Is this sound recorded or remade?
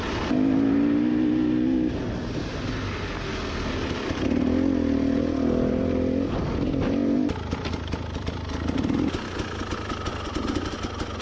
recorded